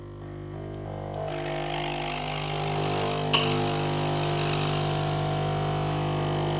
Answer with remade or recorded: recorded